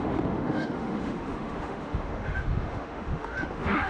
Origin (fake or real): fake